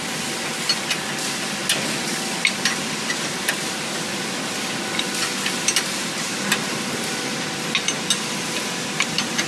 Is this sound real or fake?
real